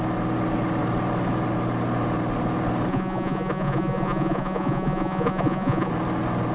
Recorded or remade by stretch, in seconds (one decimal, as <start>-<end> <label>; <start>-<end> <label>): 0.0-2.9 recorded; 2.9-5.9 remade; 5.9-6.5 recorded